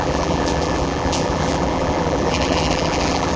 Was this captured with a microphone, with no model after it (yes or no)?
no